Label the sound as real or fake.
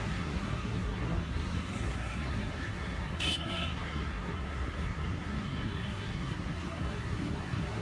fake